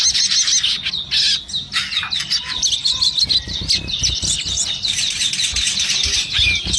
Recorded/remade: recorded